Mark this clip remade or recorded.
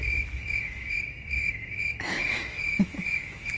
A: remade